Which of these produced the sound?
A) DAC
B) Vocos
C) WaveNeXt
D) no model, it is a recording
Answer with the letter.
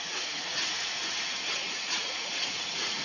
B